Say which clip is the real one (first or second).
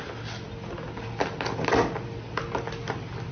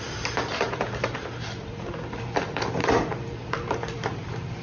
first